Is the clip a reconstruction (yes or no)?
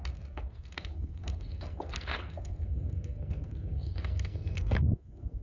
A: yes